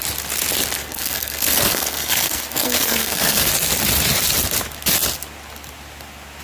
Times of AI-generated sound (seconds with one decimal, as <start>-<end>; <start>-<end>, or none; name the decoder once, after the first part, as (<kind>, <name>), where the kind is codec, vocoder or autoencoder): 0.8-3.5 (codec, SNAC)